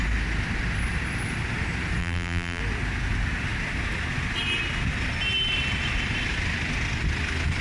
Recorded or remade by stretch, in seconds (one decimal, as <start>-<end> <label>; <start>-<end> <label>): 0.0-2.0 recorded; 2.0-2.6 remade; 2.6-7.6 recorded